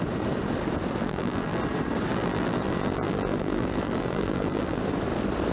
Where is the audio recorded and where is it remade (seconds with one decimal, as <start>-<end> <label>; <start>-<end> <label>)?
0.0-1.0 recorded; 1.0-1.6 remade; 1.6-2.1 recorded; 2.1-4.8 remade; 4.8-5.5 recorded